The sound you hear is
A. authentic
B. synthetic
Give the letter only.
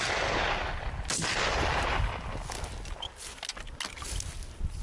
A